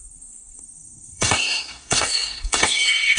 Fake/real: fake